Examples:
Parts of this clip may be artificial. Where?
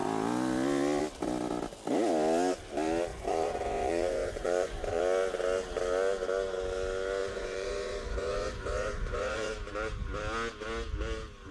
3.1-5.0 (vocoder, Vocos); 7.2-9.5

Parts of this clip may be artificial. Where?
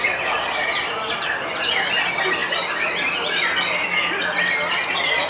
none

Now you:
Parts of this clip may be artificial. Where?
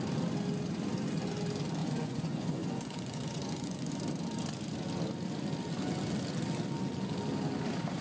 1.8-3.9 (vocoder, Vocos)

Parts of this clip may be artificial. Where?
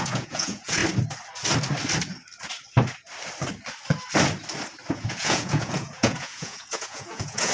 0.0-0.8 (vocoder, Vocos); 4.9-7.5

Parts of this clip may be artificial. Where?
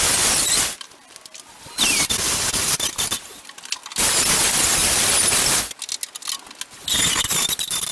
none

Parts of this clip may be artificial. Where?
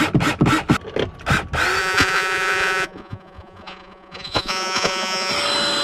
1.8-5.3 (vocoder, Vocos)